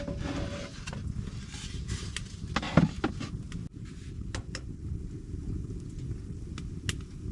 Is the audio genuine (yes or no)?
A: yes